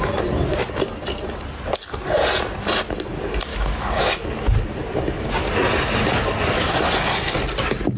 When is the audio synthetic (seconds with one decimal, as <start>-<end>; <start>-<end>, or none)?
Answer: 3.5-4.1